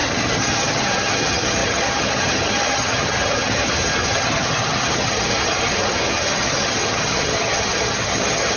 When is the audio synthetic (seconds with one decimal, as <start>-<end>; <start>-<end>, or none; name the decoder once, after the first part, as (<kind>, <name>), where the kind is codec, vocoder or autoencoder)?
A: 0.0-8.6 (vocoder, HiFi-GAN)